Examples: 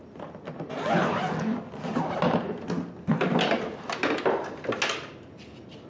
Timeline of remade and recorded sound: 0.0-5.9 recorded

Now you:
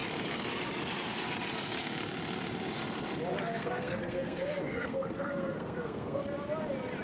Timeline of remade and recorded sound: 0.0-3.3 recorded; 3.3-6.2 remade; 6.2-7.0 recorded

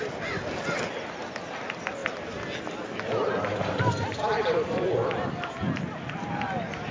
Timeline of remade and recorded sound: 0.0-6.9 recorded

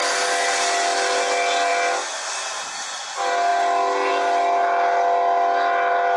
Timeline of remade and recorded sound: 0.0-6.2 recorded

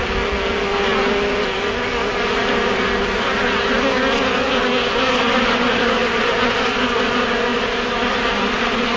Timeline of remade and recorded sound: 0.0-9.0 recorded

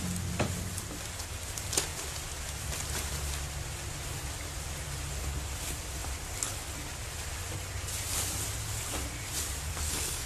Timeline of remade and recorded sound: 0.0-9.7 recorded; 9.7-10.3 remade

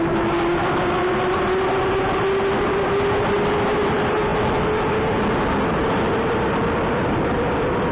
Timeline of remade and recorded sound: 0.0-7.9 recorded